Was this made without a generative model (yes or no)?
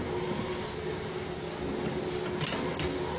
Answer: yes